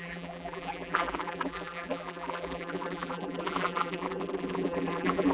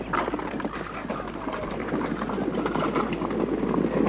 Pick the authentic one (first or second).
second